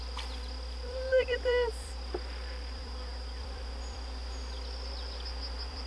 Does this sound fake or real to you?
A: fake